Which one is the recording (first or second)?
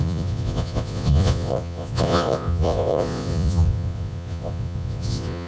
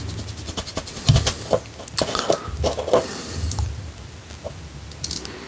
second